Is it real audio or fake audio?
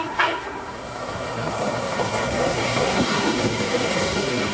fake